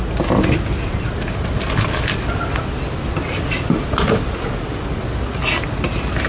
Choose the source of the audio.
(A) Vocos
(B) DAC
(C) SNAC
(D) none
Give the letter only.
D